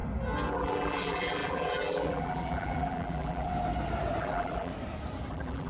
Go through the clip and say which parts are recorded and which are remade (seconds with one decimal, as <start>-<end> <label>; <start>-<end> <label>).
0.0-0.5 recorded; 0.5-3.5 remade; 3.5-4.2 recorded; 4.2-4.7 remade; 4.7-5.3 recorded; 5.3-5.7 remade